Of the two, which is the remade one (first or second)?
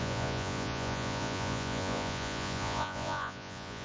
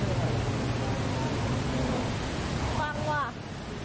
first